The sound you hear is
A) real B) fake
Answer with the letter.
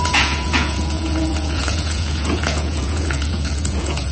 B